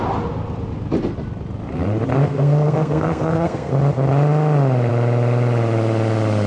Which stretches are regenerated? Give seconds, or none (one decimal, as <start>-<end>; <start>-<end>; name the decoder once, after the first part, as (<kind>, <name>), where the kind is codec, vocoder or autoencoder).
2.2-3.7 (codec, SNAC)